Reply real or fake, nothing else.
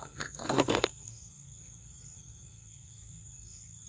fake